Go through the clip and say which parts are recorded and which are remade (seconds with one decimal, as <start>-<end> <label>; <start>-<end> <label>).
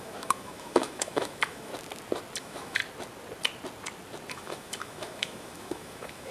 0.0-1.7 remade; 1.7-2.4 recorded; 2.4-2.8 remade; 2.8-4.3 recorded; 4.3-6.3 remade